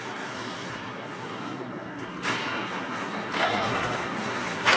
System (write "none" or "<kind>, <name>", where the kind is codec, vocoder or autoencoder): codec, SNAC